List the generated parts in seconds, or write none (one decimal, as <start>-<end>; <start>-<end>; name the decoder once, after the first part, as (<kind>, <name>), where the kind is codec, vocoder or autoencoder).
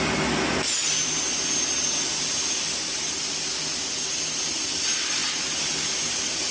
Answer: none